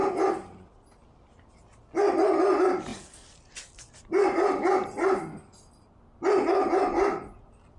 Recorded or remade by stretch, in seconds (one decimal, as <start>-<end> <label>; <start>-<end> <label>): 0.0-7.8 recorded